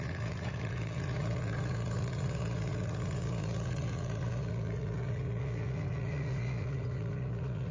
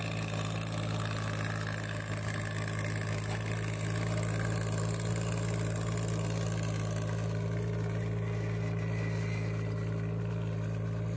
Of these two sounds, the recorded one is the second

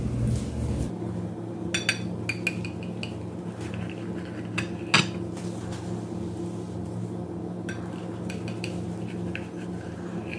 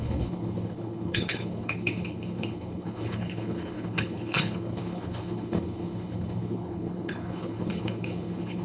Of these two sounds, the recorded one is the first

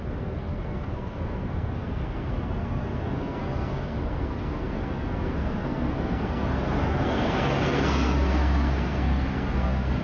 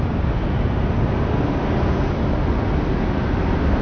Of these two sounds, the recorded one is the second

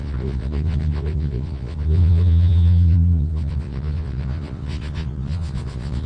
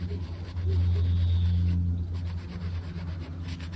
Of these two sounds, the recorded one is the second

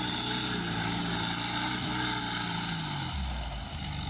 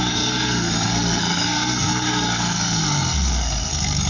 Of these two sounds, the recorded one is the first